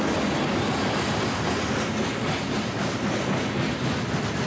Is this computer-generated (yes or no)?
no